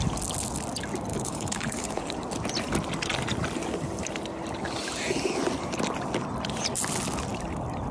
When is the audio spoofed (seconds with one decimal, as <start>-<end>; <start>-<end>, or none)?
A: 1.1-2.1